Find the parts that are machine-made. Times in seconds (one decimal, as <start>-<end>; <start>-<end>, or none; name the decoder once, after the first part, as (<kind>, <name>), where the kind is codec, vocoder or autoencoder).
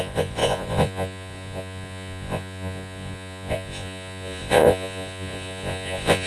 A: 0.0-6.3 (vocoder, Vocos)